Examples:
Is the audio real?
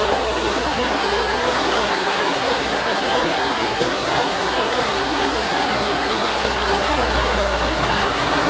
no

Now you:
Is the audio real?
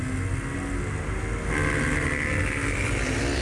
yes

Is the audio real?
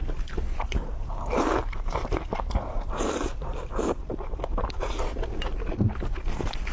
yes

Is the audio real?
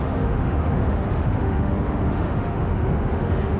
no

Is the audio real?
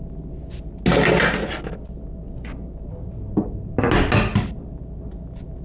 yes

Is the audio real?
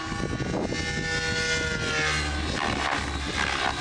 yes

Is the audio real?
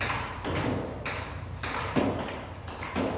no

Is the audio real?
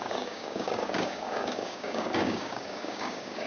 no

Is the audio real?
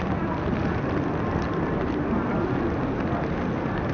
yes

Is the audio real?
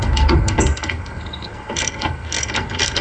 no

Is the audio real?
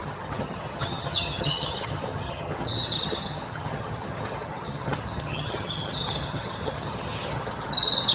no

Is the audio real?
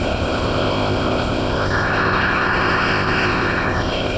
no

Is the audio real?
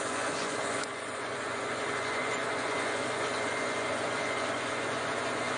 no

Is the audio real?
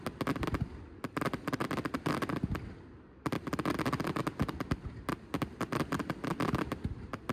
yes